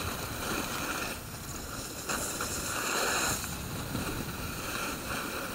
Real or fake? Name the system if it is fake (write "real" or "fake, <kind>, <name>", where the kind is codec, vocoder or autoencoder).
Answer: real